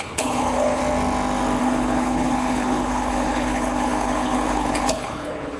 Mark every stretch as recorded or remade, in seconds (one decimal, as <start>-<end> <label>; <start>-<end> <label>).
0.0-0.8 remade; 0.8-1.6 recorded; 1.6-5.6 remade